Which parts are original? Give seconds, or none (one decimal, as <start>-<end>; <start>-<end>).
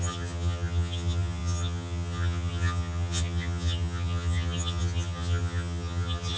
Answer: none